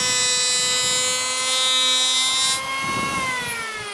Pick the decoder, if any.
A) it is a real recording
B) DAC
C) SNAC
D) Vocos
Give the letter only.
A